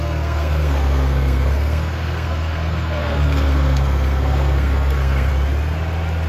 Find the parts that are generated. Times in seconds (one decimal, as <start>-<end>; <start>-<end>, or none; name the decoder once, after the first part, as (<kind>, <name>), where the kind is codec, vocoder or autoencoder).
0.0-5.3 (codec, SNAC)